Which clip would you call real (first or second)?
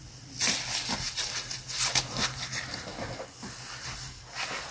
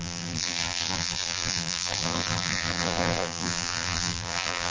first